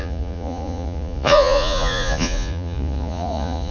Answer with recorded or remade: remade